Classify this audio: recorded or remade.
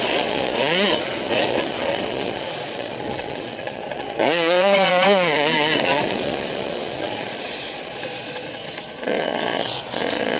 remade